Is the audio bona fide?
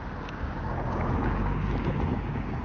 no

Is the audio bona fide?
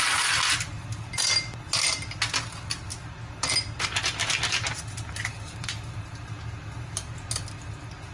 yes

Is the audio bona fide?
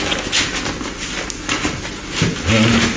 yes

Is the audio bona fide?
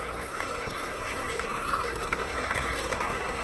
no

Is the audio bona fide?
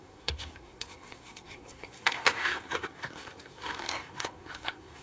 no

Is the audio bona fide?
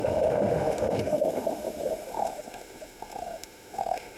no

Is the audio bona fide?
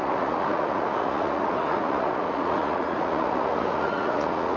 no